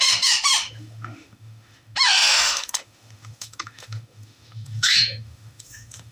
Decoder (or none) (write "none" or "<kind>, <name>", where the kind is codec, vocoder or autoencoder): autoencoder, DAC-VAE